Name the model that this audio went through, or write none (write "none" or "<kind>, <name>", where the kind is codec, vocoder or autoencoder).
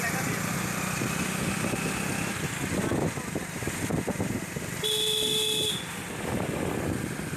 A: none